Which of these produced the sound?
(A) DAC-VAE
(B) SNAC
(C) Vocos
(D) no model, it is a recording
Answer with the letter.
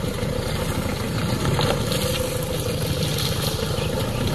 D